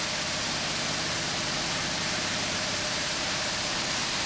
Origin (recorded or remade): recorded